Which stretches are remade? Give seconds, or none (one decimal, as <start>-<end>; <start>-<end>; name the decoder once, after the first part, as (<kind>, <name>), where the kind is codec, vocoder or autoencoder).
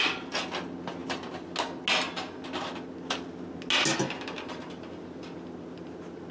none